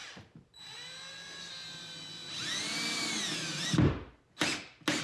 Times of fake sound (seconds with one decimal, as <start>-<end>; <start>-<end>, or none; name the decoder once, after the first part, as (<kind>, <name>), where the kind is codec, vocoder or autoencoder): none